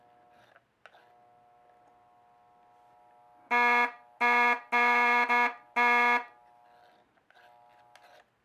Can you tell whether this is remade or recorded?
recorded